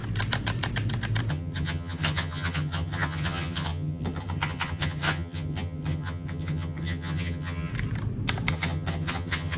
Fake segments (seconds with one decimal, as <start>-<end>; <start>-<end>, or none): 1.3-7.7; 8.5-9.6